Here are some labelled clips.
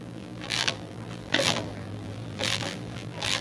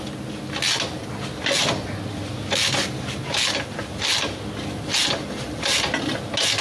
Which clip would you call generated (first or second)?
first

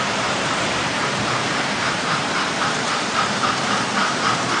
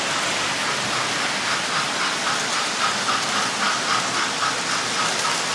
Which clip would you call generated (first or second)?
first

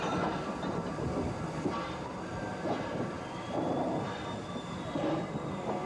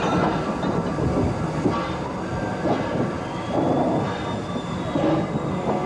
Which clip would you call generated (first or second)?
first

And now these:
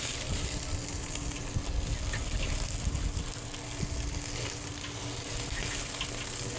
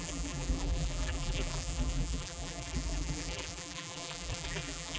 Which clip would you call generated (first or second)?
second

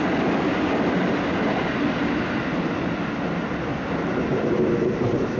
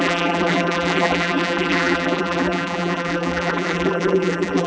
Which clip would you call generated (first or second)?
second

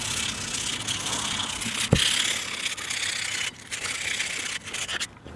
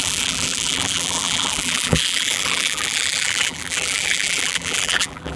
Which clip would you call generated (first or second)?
second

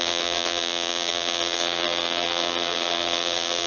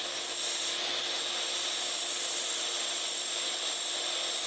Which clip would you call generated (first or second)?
first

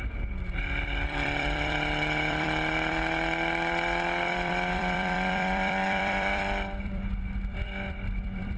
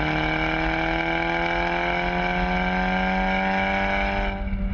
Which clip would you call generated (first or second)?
first